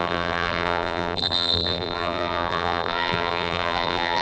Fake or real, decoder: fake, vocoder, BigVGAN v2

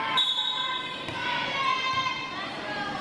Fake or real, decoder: real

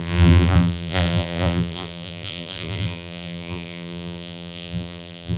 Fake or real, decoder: fake, vocoder, BigVGAN v2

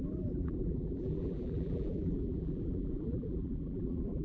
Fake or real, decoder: fake, vocoder, BigVGAN v2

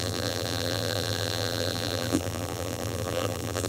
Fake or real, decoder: fake, vocoder, BigVGAN v2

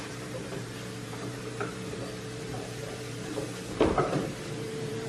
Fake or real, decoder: fake, vocoder, BigVGAN v2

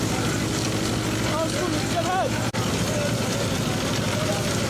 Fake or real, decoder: real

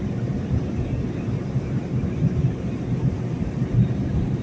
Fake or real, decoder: fake, vocoder, BigVGAN v2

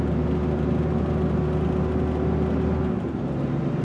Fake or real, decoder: real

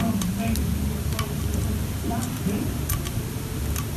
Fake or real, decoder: real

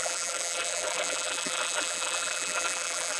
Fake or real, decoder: fake, vocoder, BigVGAN v2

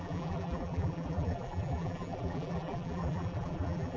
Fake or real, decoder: fake, vocoder, BigVGAN v2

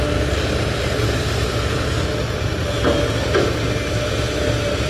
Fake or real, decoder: real